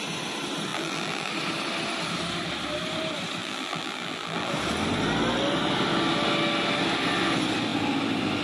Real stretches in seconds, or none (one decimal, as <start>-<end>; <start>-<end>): 0.0-0.7; 1.3-3.4; 4.5-8.4